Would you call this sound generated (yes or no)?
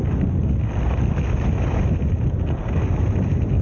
no